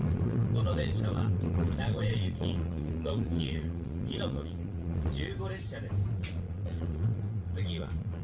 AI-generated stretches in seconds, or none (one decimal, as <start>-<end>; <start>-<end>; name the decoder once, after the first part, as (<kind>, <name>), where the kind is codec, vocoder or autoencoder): 0.0-5.3 (vocoder, Vocos); 6.1-8.2